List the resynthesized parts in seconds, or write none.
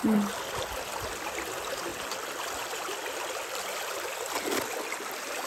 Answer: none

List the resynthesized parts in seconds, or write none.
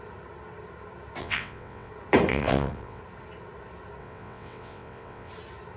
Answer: 1.2-1.9 (vocoder, WaveNeXt); 2.3-3.0; 4.0-5.3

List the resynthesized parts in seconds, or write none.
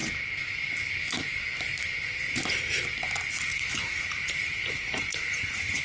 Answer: 3.5-5.8 (vocoder, Vocos)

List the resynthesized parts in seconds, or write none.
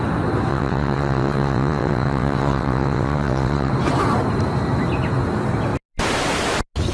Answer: 0.5-3.7 (vocoder, WaveNeXt)